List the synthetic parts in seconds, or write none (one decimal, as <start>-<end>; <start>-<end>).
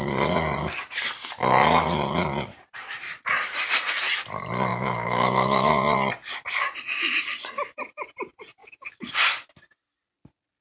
4.7-5.7; 8.6-9.1